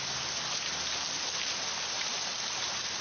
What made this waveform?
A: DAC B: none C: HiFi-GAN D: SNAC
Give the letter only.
B